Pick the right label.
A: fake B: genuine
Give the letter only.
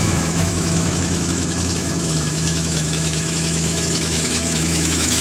A